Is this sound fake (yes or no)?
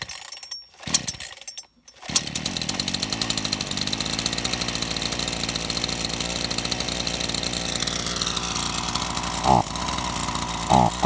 no